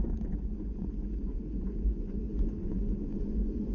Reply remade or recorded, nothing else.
remade